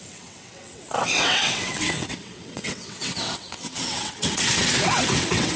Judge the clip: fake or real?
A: fake